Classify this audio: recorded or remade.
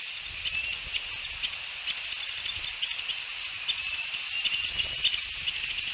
recorded